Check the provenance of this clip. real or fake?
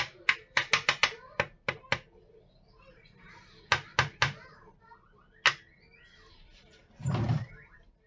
real